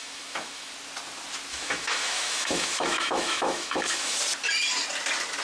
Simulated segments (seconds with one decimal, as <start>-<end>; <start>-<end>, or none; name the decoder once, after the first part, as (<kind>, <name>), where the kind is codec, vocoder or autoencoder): 0.0-0.7 (autoencoder, DAC-VAE); 1.5-4.2